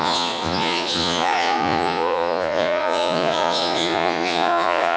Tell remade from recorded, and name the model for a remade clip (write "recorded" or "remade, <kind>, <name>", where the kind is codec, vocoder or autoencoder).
remade, vocoder, Vocos